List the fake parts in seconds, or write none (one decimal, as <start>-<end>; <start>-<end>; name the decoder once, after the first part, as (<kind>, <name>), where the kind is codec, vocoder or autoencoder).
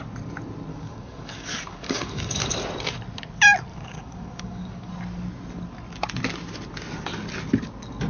0.7-2.6 (codec, DAC); 3.7-4.9